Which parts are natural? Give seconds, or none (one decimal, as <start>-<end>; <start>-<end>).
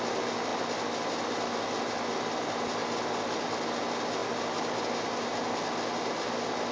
0.0-6.7